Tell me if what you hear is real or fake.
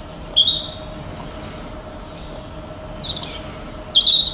real